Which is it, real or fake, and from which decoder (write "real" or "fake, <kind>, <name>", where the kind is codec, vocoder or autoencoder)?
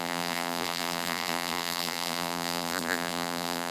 fake, vocoder, BigVGAN v2